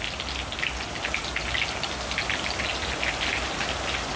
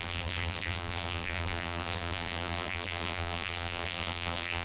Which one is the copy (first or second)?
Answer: second